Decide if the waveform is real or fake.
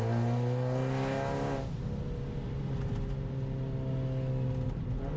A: real